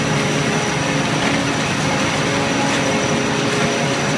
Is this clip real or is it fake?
real